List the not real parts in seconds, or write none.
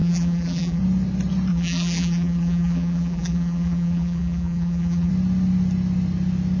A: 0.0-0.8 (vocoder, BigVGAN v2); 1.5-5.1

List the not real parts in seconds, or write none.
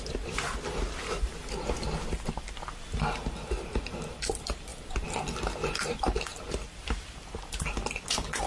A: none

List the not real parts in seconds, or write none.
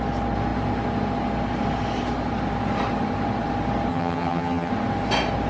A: 3.9-4.7 (vocoder, HiFi-GAN)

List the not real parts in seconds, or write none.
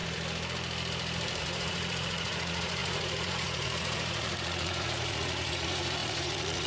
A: 1.4-6.7 (vocoder, Vocos)